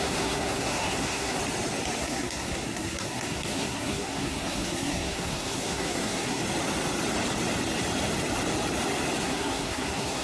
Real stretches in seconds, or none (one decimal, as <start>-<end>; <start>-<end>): 1.4-2.0; 6.4-9.2